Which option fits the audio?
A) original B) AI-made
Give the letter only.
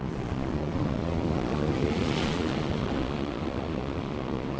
B